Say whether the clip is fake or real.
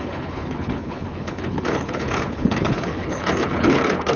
fake